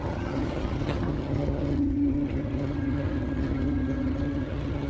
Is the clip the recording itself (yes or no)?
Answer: no